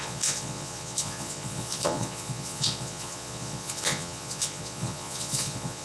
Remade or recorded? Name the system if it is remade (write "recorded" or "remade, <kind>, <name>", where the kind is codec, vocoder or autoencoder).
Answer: remade, vocoder, Vocos